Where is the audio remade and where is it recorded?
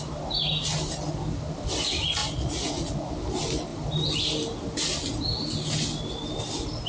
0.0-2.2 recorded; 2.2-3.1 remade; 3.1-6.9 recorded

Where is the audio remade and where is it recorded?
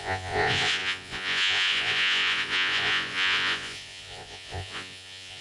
0.0-5.4 remade